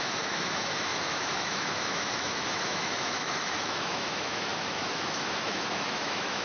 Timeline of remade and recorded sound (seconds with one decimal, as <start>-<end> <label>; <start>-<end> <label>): 0.0-6.4 remade